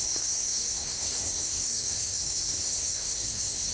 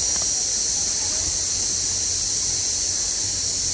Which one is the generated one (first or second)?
first